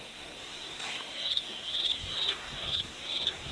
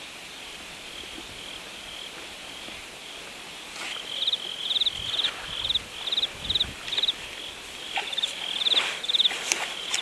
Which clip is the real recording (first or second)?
second